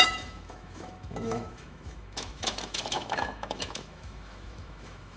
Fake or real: fake